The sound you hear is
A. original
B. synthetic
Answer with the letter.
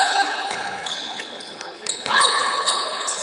B